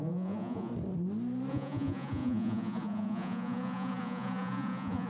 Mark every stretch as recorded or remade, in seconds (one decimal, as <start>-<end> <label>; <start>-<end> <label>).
0.0-0.7 remade; 0.7-1.5 recorded; 1.5-5.1 remade